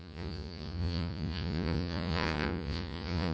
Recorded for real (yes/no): no